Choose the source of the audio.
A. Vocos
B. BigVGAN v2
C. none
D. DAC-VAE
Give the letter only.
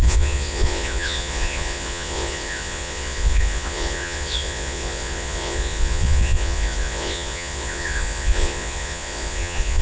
A